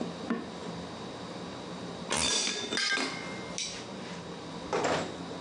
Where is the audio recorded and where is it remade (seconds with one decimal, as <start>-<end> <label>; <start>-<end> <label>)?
0.0-5.4 recorded